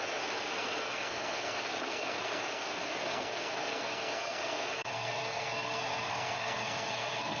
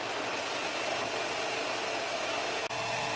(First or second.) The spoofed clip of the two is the first